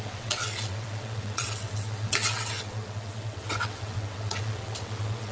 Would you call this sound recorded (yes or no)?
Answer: no